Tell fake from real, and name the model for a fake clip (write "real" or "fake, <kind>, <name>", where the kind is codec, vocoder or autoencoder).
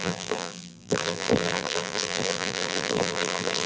fake, vocoder, BigVGAN v2